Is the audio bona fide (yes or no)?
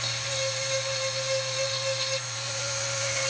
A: no